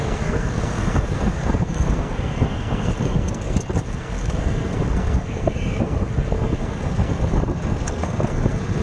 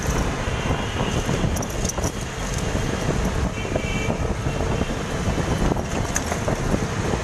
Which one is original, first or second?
second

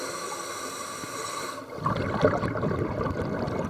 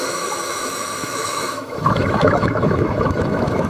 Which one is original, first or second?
first